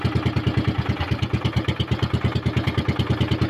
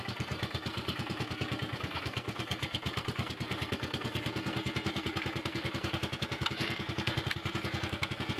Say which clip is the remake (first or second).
second